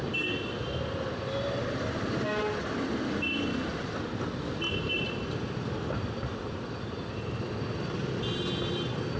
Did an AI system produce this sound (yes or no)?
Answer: no